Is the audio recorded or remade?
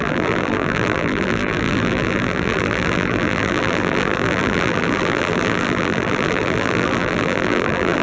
remade